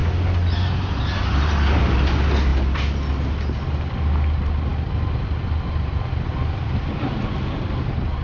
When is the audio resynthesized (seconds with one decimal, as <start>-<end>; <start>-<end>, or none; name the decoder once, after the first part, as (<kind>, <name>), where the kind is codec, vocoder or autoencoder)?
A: 4.7-7.3 (vocoder, BigVGAN v2)